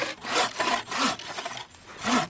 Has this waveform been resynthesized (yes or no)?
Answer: no